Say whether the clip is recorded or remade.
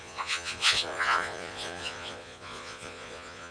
remade